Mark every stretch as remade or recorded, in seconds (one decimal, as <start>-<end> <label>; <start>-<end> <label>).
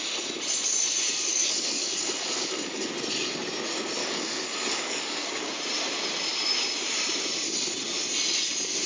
0.0-1.3 recorded; 1.3-2.9 remade; 2.9-4.0 recorded; 4.0-5.5 remade; 5.5-8.9 recorded